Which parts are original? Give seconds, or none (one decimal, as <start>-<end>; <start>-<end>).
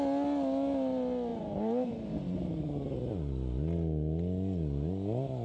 0.0-1.3; 3.1-5.4